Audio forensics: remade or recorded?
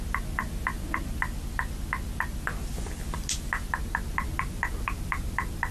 recorded